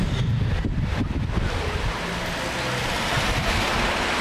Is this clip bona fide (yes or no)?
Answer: no